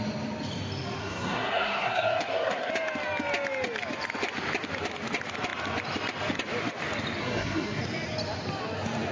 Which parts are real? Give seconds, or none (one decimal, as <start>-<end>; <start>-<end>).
0.0-1.0; 2.7-7.2; 7.8-9.1